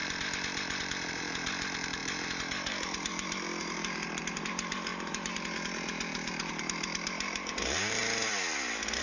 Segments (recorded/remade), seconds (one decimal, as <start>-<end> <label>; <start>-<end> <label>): 0.0-8.0 remade; 8.0-9.0 recorded